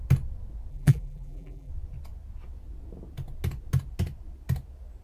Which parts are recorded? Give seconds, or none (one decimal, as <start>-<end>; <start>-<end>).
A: 0.0-0.7; 1.7-5.0

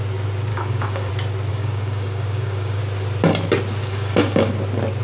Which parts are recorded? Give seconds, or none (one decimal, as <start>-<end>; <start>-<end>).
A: 0.0-0.5; 1.1-1.5; 2.8-3.8; 4.5-5.0

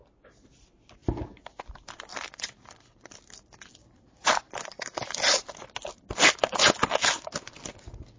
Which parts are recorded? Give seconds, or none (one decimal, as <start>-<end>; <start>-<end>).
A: 0.0-2.1; 2.7-3.8; 4.9-8.2

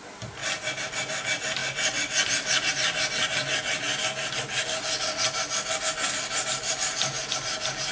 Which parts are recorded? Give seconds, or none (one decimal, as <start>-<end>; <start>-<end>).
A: 0.0-7.9

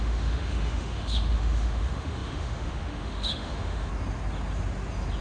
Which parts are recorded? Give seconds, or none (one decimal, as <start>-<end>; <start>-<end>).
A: 3.9-5.2